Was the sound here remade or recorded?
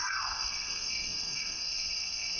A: remade